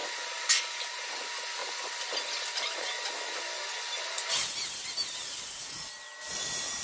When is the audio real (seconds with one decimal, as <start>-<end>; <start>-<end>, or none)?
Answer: 0.0-6.8